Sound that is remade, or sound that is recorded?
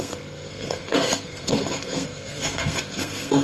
remade